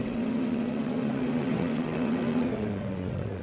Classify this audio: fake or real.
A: fake